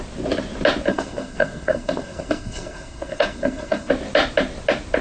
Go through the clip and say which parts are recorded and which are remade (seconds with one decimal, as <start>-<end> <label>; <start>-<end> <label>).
0.0-0.9 recorded; 0.9-3.9 remade; 3.9-5.0 recorded